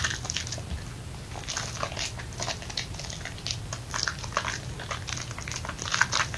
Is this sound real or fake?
real